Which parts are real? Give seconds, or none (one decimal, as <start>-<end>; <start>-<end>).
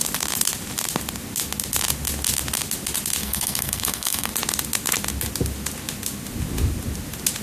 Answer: 0.0-3.2; 4.3-7.4